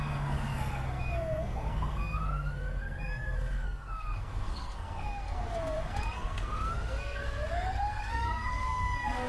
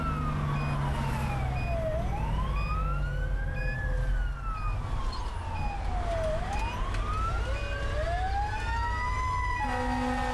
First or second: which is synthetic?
first